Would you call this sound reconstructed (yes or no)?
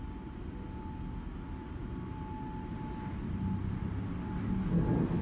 no